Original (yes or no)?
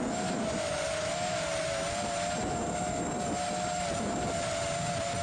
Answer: yes